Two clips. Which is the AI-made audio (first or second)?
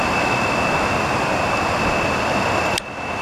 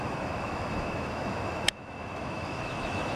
second